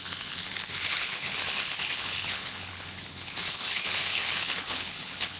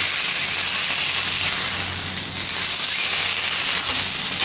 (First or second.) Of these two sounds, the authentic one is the second